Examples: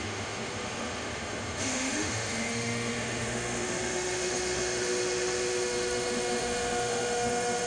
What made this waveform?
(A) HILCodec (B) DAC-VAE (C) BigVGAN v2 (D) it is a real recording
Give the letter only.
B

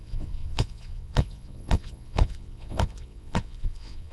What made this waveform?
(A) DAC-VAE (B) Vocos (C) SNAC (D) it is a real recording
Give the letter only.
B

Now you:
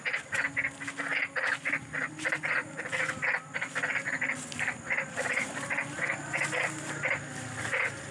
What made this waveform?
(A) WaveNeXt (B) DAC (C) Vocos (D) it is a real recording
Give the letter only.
D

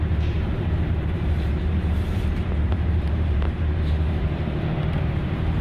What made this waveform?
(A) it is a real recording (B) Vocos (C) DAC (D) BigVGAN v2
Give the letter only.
D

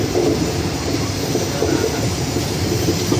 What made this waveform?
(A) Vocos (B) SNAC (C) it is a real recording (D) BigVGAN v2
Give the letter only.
D